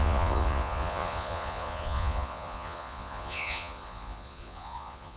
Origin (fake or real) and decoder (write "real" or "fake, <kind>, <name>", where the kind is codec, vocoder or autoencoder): fake, vocoder, Vocos